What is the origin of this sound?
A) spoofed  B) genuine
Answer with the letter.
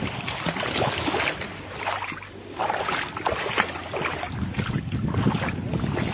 B